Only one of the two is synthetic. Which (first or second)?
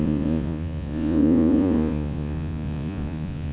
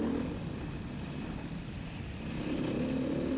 first